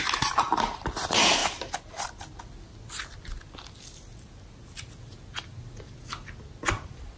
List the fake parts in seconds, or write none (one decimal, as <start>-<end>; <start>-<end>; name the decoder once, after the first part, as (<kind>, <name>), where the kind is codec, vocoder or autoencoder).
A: none